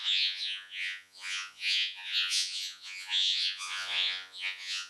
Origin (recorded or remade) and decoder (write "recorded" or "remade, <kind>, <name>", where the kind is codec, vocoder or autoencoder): remade, vocoder, Vocos